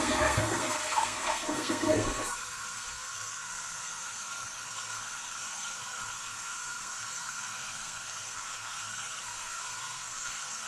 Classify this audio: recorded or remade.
remade